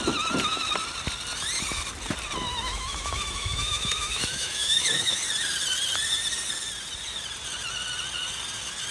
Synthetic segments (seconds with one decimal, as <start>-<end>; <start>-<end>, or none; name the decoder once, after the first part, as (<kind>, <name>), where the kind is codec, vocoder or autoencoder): 2.5-5.2 (autoencoder, DAC-VAE)